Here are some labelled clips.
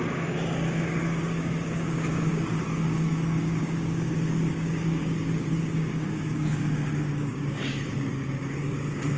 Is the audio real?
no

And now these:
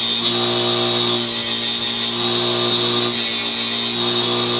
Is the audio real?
yes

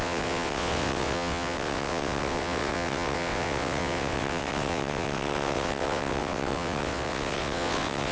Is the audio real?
no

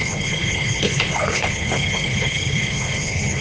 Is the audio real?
no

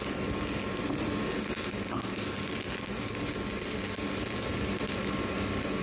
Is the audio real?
yes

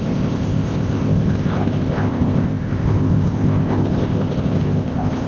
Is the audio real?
no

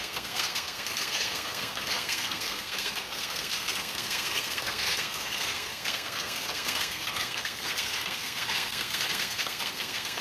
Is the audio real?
no